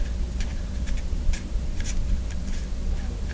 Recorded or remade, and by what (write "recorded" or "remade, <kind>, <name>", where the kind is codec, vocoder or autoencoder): remade, vocoder, BigVGAN v2